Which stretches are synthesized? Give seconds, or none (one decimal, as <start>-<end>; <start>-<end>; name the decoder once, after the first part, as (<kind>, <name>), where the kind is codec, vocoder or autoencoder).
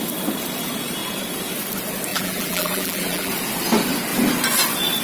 2.1-3.3 (vocoder, BigVGAN v2)